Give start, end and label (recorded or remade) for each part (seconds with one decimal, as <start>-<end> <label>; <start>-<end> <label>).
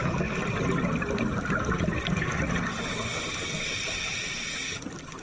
0.0-5.2 recorded